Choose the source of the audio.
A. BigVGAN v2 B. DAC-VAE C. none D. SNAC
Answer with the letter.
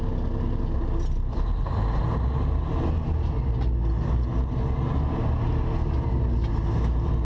C